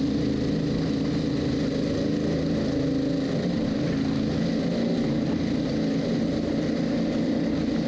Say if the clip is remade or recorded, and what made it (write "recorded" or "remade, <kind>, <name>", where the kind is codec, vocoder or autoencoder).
recorded